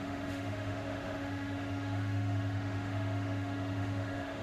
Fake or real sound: fake